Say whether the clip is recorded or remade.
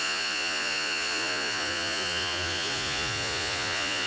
remade